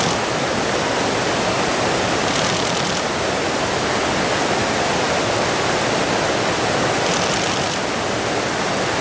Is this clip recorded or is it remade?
recorded